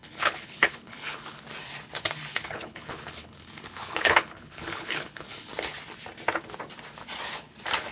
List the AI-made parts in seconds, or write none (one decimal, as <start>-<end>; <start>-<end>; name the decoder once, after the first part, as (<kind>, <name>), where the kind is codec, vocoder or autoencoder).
0.0-1.4 (codec, HILCodec); 2.3-5.5

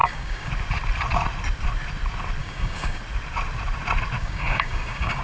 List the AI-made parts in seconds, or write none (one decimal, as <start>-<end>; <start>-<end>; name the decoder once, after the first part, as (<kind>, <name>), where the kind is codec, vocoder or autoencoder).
0.0-0.5 (codec, DAC); 2.4-3.0; 4.2-5.2

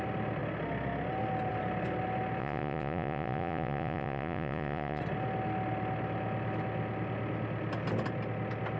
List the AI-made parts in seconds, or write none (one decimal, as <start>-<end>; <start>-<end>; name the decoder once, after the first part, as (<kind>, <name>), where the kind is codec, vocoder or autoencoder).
2.4-5.0 (vocoder, Vocos)